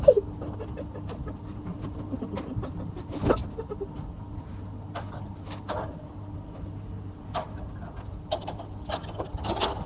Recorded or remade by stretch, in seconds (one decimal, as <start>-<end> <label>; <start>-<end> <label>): 0.0-9.9 recorded